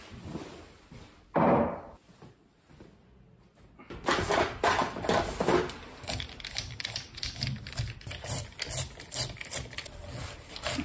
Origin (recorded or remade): recorded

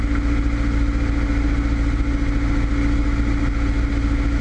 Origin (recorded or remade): recorded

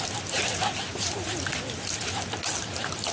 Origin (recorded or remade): recorded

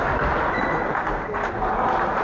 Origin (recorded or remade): recorded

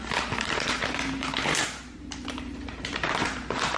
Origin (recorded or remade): remade